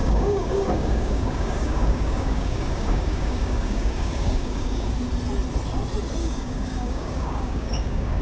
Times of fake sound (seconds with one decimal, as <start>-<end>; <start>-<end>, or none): 0.0-4.9; 6.2-8.2